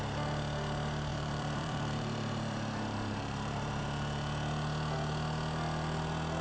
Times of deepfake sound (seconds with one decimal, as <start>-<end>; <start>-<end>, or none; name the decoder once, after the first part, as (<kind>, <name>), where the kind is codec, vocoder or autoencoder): 1.1-3.8 (vocoder, BigVGAN v2)